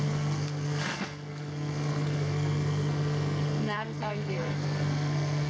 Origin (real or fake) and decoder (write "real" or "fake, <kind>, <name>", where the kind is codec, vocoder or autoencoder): fake, codec, SNAC